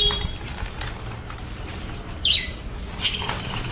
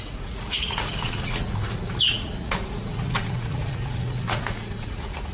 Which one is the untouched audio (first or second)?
first